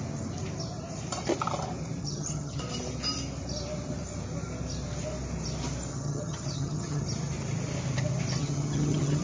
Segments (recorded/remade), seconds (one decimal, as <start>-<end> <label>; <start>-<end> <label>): 0.0-2.0 recorded; 2.0-2.6 remade; 2.6-5.9 recorded; 5.9-7.0 remade; 7.0-8.4 recorded; 8.4-9.2 remade